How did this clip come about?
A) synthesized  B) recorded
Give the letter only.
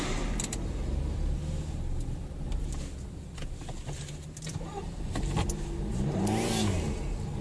A